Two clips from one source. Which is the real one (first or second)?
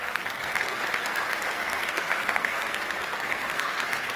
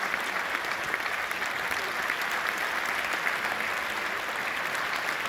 second